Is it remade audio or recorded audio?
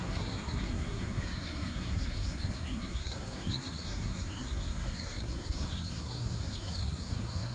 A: remade